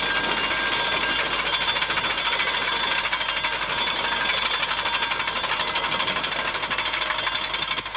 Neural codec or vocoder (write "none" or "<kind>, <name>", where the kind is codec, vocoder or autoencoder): none